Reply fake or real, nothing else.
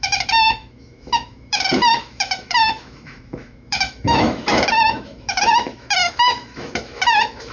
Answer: fake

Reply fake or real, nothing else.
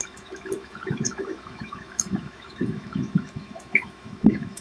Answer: fake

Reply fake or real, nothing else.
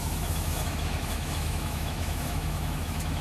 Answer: fake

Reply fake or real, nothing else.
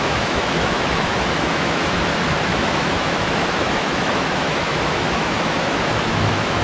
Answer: fake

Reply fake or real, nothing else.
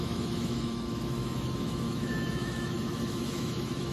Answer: fake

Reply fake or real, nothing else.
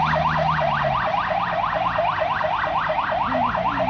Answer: real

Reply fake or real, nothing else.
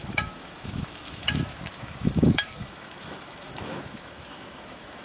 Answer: fake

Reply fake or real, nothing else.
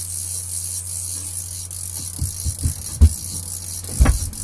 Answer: real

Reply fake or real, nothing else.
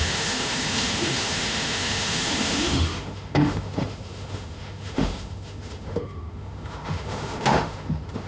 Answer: fake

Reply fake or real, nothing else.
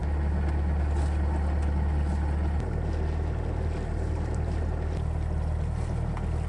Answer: real